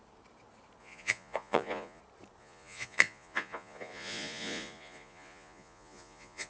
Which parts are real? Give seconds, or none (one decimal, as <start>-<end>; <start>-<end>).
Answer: 0.0-0.8; 2.0-2.4